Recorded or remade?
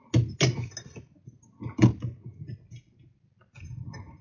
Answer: recorded